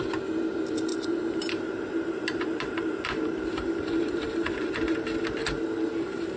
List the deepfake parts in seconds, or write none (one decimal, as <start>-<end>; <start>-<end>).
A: 0.9-4.7; 5.4-6.4